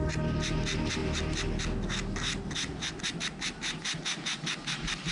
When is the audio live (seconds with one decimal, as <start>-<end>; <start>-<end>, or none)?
0.0-5.1

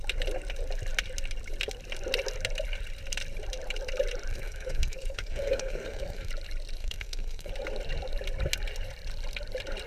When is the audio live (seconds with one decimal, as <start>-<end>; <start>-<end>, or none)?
0.0-4.3; 6.3-6.8; 7.5-9.9

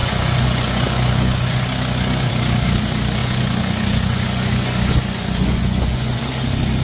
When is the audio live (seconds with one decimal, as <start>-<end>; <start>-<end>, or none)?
2.3-3.2; 6.2-6.8

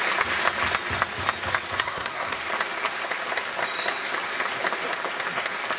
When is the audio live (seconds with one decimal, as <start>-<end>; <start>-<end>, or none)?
0.0-1.8; 2.4-5.8

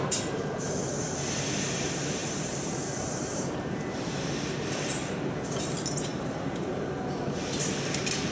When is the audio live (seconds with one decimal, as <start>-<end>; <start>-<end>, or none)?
0.0-2.2; 4.3-6.1; 6.8-8.3